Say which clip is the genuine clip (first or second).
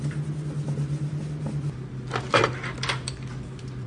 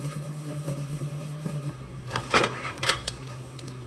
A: first